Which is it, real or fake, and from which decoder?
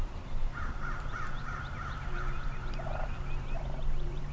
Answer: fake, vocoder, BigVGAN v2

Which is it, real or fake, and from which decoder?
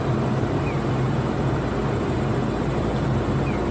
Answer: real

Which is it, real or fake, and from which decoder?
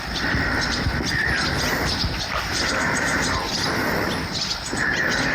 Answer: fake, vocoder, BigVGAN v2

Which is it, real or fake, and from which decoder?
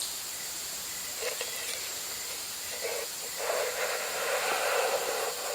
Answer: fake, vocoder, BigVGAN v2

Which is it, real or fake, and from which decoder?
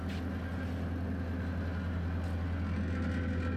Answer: real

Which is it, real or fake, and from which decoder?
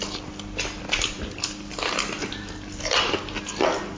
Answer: real